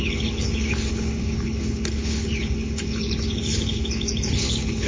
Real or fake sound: fake